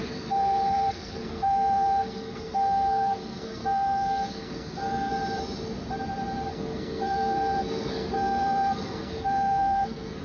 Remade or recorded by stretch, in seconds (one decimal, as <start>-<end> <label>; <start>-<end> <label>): 0.0-5.1 remade; 5.1-6.5 recorded; 6.5-10.2 remade